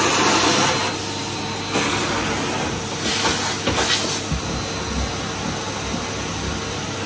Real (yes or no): yes